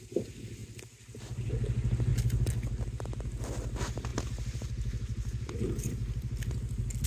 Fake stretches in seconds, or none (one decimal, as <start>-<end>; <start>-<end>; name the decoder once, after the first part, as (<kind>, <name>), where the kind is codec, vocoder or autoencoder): none